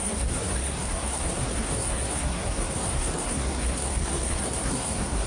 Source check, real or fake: fake